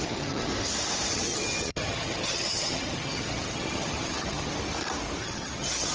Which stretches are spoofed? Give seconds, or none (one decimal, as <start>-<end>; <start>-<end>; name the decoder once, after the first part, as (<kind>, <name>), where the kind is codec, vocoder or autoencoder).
0.0-0.5 (vocoder, HiFi-GAN); 1.1-4.5; 5.2-5.9

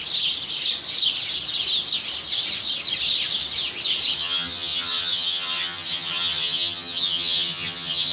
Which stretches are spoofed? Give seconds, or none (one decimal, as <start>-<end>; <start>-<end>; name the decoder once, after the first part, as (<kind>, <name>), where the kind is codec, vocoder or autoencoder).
4.2-8.1 (vocoder, HiFi-GAN)